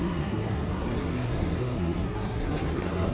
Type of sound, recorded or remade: remade